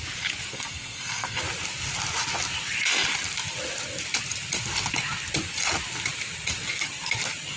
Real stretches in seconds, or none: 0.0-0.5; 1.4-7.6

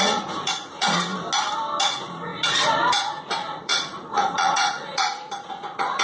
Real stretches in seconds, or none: 1.1-1.8

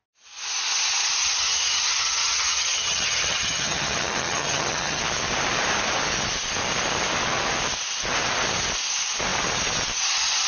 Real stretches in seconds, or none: 0.0-1.2; 5.0-10.5